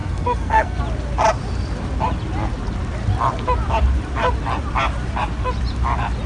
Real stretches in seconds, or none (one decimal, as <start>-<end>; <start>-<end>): 0.8-6.3